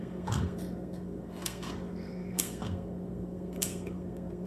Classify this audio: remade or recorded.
remade